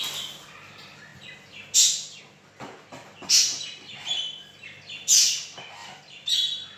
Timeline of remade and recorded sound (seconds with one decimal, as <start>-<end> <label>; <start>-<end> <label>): 0.0-5.8 recorded; 5.8-6.3 remade; 6.3-6.8 recorded